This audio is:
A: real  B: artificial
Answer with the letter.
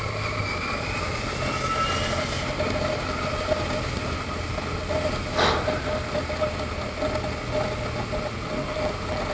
A